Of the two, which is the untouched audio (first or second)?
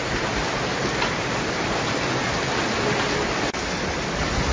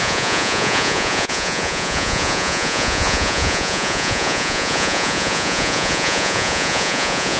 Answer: first